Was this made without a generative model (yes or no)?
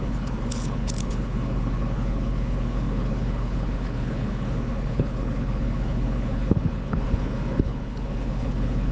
no